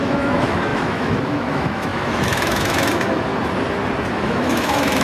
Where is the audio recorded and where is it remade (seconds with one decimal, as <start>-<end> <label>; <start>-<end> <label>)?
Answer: 0.0-3.3 remade; 3.3-4.1 recorded; 4.1-5.0 remade

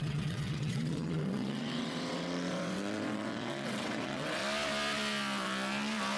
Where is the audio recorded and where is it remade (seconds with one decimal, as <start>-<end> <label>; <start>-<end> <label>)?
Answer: 0.0-4.4 remade; 4.4-6.2 recorded

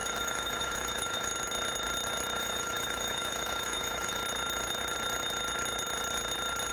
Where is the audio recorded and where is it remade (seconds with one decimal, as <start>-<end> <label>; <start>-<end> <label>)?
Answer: 0.0-1.3 remade; 1.3-2.4 recorded; 2.4-4.2 remade; 4.2-6.7 recorded

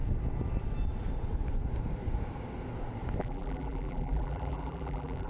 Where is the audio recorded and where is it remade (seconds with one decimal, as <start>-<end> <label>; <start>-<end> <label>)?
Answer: 0.0-3.2 recorded; 3.2-5.3 remade

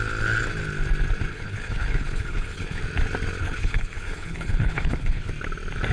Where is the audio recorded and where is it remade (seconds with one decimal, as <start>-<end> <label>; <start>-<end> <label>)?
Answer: 0.0-1.3 recorded; 1.3-2.8 remade; 2.8-3.4 recorded; 3.4-5.3 remade; 5.3-5.9 recorded

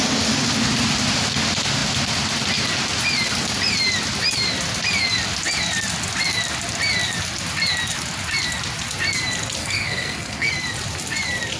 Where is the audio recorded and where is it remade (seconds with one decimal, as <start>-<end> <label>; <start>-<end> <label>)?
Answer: 0.0-9.6 recorded; 9.6-10.5 remade; 10.5-11.6 recorded

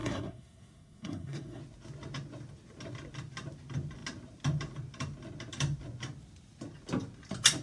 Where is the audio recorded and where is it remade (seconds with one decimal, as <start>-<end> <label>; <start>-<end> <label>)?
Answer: 0.0-1.6 remade; 1.6-7.6 recorded

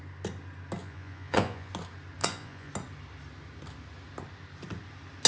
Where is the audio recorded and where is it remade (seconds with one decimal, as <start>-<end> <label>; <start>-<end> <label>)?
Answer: 0.0-0.8 recorded; 0.8-1.7 remade; 1.7-2.2 recorded; 2.2-2.7 remade; 2.7-5.3 recorded